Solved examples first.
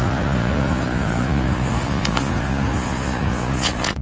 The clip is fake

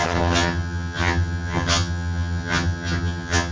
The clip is fake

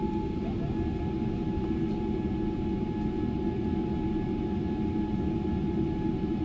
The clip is real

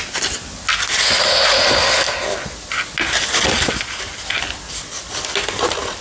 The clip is real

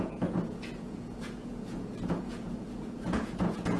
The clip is fake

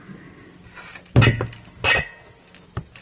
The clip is real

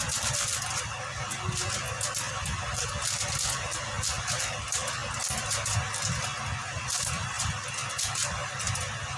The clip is real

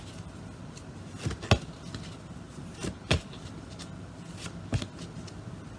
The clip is real